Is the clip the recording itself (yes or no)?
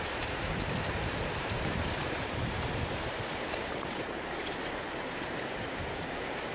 no